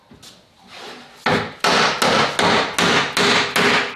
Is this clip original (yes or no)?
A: yes